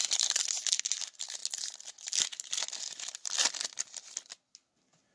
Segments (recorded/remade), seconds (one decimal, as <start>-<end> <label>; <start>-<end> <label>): 0.0-0.8 remade; 0.8-5.1 recorded